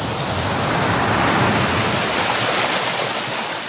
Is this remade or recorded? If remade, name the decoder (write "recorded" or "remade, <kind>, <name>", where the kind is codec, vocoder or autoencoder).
recorded